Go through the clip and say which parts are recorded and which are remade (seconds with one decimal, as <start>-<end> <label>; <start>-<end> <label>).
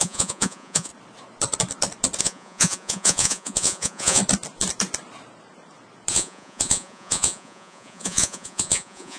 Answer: 0.0-0.9 remade; 0.9-2.2 recorded; 2.2-4.2 remade; 4.2-6.1 recorded; 6.1-9.2 remade